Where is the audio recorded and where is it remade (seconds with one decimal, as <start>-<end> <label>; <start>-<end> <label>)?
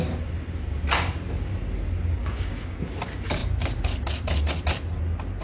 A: 0.0-2.2 recorded; 2.2-2.9 remade; 2.9-5.4 recorded